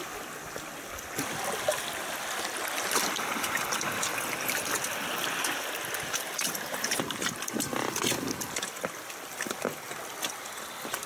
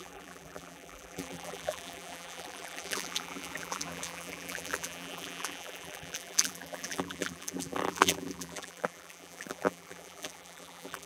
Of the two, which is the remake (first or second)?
second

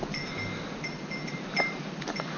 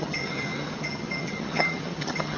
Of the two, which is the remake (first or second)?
second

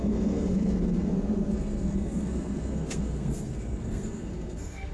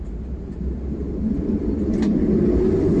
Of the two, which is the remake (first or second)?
first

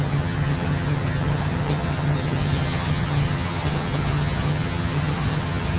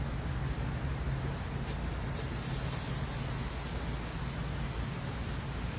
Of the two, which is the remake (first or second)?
first